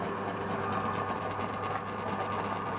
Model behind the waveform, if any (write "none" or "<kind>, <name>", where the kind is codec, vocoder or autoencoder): none